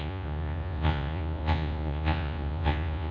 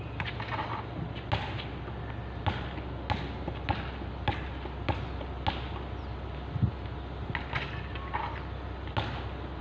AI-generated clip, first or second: first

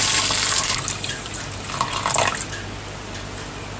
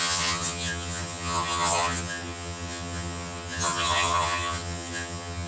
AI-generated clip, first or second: second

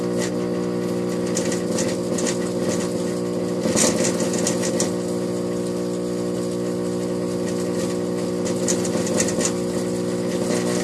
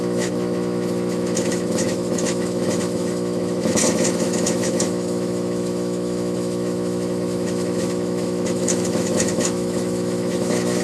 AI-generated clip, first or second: second